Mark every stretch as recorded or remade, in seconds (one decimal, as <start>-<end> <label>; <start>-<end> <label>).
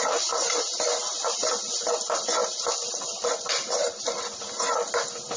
0.0-5.4 recorded